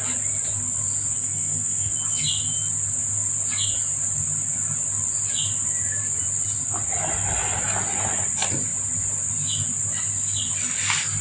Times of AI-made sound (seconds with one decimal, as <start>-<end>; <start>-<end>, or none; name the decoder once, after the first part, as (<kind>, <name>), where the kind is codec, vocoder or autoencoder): 1.2-1.9 (codec, SNAC)